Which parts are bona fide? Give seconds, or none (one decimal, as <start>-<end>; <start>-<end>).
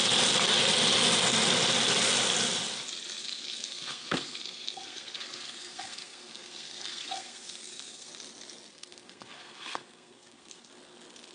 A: 0.0-3.2; 8.1-8.7; 10.7-11.3